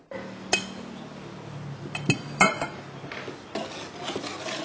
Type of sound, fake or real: real